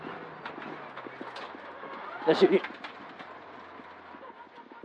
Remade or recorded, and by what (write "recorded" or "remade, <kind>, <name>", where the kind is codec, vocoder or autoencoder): recorded